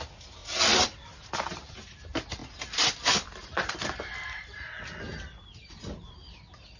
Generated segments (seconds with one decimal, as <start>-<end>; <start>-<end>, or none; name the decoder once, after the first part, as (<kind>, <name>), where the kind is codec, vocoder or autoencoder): none